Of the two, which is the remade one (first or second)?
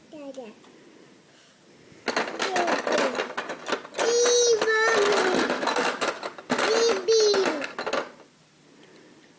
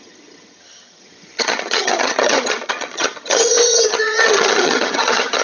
second